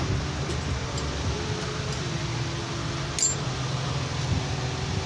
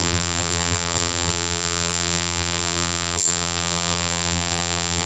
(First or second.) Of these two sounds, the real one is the first